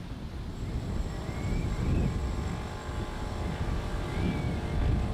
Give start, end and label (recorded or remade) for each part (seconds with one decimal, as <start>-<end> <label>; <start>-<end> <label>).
0.0-5.1 recorded